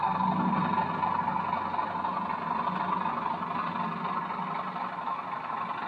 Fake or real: real